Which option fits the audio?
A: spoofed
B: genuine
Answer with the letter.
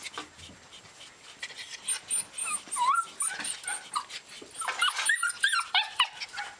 B